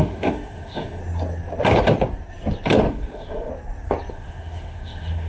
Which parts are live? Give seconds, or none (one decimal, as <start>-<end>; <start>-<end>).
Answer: 1.0-2.9; 3.5-4.1